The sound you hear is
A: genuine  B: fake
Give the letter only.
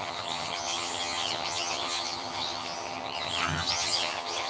B